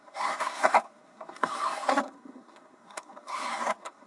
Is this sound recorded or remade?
remade